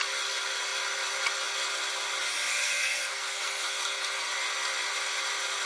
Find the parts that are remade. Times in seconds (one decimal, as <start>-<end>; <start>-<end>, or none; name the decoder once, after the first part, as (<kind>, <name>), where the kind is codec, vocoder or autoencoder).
2.5-4.3 (codec, SNAC)